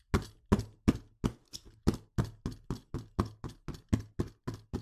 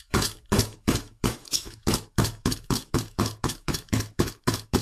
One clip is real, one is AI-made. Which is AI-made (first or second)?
second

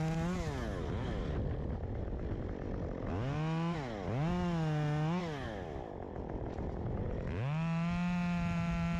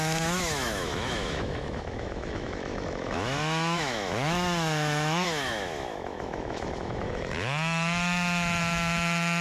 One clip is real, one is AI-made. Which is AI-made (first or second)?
second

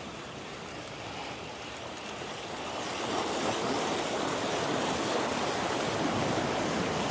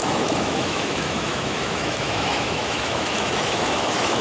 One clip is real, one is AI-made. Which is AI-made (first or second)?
second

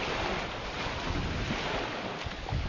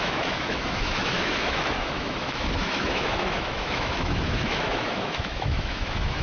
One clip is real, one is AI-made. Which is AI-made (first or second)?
second